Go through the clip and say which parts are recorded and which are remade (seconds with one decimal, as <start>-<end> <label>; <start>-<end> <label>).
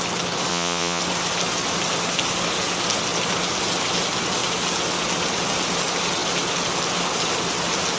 0.0-0.5 recorded; 0.5-1.0 remade; 1.0-8.0 recorded